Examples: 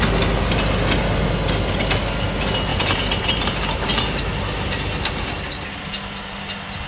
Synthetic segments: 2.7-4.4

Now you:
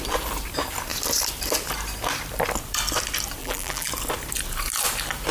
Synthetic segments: 3.4-3.9

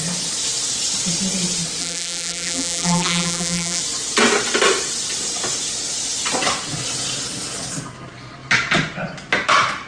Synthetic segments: 1.8-3.8

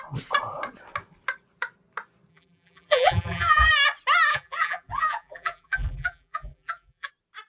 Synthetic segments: 2.3-3.7; 4.3-7.1